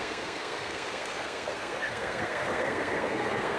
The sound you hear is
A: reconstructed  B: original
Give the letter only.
A